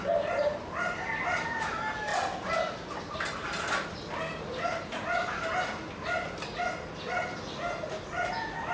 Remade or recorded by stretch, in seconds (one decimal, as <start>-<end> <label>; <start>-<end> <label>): 0.0-8.7 recorded